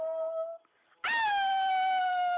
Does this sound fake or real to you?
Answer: real